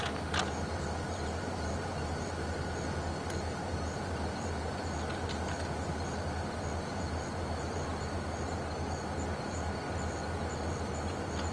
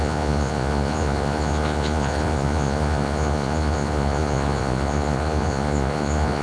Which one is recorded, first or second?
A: first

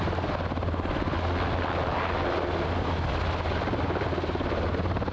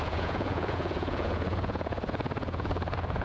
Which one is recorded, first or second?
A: first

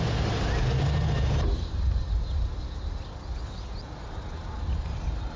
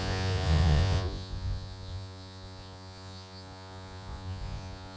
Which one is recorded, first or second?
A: first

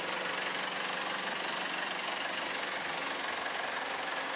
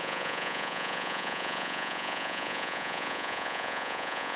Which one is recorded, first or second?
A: first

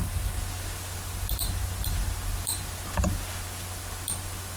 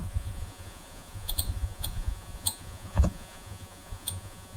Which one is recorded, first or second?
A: first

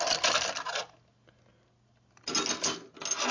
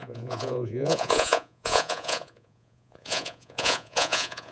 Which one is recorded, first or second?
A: first